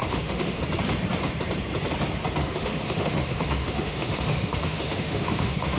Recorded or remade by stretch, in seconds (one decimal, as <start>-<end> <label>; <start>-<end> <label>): 0.0-0.6 remade; 0.6-2.4 recorded; 2.4-5.8 remade